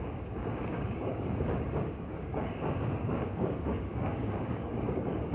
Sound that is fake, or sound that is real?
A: fake